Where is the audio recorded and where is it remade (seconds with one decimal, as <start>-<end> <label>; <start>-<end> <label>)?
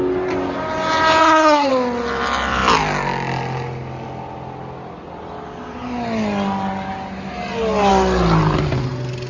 0.0-1.2 recorded; 1.2-1.7 remade; 1.7-9.3 recorded